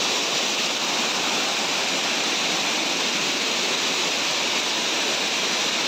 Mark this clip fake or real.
real